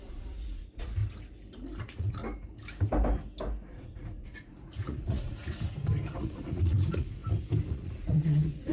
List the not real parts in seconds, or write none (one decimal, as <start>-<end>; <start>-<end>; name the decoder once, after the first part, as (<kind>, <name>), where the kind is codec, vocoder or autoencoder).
0.0-1.0 (vocoder, Vocos); 1.8-2.2; 3.7-5.4; 6.2-7.2; 7.7-8.7